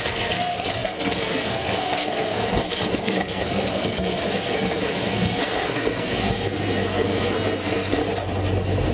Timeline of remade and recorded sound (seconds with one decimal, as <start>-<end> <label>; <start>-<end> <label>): 0.0-8.0 remade; 8.0-8.9 recorded